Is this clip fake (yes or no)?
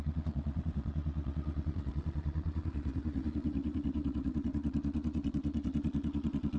yes